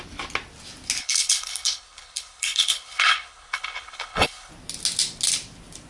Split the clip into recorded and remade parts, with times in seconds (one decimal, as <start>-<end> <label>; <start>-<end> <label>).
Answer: 0.0-1.0 recorded; 1.0-4.5 remade; 4.5-5.9 recorded